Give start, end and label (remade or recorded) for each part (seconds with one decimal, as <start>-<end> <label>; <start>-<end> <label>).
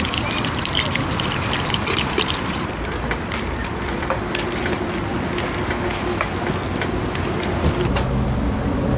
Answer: 0.0-5.1 remade; 5.1-8.4 recorded; 8.4-9.0 remade